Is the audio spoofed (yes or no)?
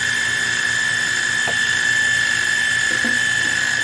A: no